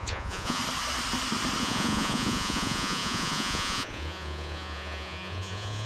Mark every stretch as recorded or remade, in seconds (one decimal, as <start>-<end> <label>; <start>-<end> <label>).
0.0-0.6 remade; 0.6-1.6 recorded; 1.6-5.9 remade